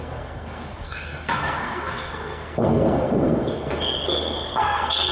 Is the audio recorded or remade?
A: remade